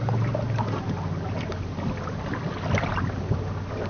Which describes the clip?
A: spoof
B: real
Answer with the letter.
B